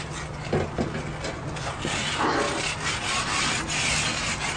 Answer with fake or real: real